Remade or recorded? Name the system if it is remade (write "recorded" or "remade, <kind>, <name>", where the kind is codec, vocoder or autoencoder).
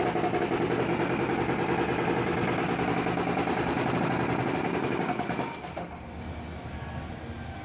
recorded